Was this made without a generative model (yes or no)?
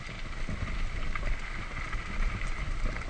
yes